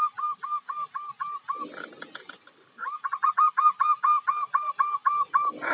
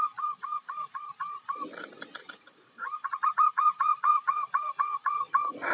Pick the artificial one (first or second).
second